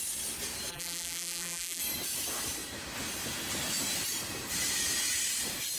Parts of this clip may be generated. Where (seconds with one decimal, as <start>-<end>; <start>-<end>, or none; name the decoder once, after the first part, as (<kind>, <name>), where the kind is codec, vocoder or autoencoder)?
0.7-1.8 (vocoder, BigVGAN v2)